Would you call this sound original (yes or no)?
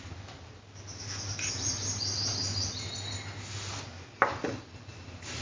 yes